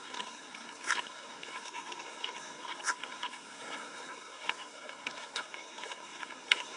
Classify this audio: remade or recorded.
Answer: remade